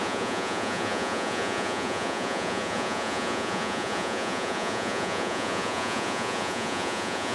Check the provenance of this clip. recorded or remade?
remade